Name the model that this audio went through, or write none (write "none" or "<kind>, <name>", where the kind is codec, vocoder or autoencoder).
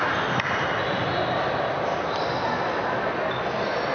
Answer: none